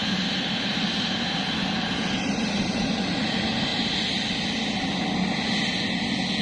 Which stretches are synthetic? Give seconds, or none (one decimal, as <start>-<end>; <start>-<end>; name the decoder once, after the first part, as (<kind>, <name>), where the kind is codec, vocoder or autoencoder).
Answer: 0.0-3.2 (vocoder, BigVGAN v2)